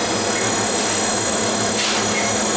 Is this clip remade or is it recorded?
recorded